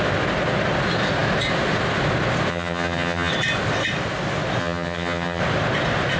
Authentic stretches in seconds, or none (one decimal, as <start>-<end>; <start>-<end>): 0.0-2.5; 3.3-4.6; 5.4-6.2